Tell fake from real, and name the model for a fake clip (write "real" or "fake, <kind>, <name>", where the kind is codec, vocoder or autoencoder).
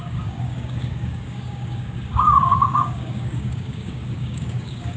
fake, codec, DAC